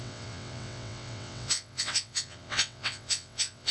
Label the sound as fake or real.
fake